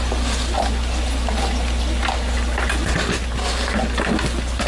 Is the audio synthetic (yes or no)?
no